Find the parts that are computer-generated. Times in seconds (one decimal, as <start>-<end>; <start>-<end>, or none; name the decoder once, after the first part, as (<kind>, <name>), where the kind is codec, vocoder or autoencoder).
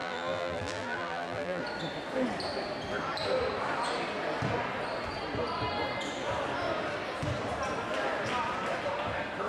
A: 0.0-1.6 (vocoder, BigVGAN v2)